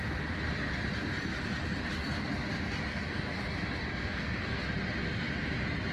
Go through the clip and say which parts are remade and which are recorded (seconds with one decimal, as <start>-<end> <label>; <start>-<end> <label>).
0.0-2.9 recorded; 2.9-3.4 remade; 3.4-3.8 recorded; 3.8-4.6 remade; 4.6-5.9 recorded